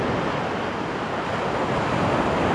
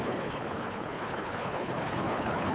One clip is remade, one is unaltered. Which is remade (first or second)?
second